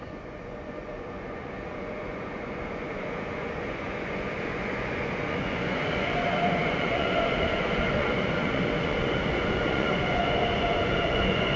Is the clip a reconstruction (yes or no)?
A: yes